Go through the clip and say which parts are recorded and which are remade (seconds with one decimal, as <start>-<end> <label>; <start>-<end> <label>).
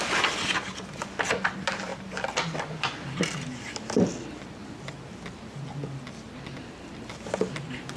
0.0-8.0 recorded